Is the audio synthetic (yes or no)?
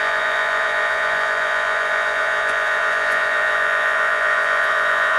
yes